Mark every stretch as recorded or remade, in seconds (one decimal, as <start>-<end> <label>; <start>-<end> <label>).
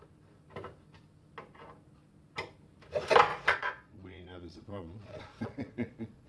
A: 0.0-3.3 recorded; 3.3-6.3 remade